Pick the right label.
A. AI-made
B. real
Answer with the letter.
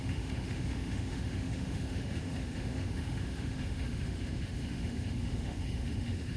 A